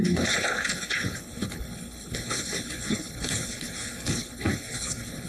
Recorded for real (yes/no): no